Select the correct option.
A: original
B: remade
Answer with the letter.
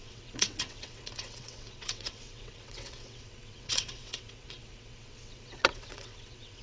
B